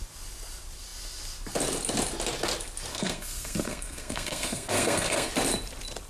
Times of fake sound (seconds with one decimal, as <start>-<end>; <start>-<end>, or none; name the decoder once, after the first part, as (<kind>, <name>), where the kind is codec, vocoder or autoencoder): 2.9-5.3 (codec, SNAC)